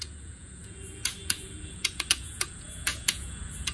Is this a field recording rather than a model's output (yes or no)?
no